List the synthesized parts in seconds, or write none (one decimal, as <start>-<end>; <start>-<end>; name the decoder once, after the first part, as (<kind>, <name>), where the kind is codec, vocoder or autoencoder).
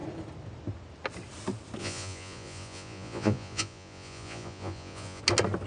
1.8-5.2 (vocoder, Vocos)